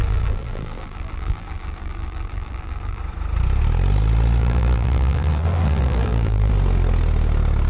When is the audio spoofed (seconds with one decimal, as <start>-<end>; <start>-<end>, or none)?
0.0-3.0; 4.4-6.5